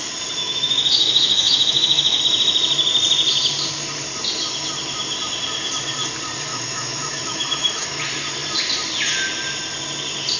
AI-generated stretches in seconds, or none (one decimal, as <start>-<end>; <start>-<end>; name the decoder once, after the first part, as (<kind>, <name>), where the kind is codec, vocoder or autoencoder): 0.4-2.2 (autoencoder, DAC-VAE); 6.5-8.0